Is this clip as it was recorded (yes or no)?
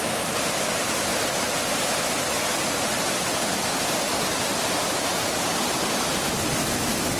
yes